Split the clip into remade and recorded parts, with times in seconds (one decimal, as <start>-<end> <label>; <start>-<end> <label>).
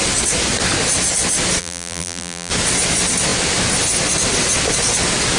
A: 0.0-1.6 recorded; 1.6-2.5 remade; 2.5-5.4 recorded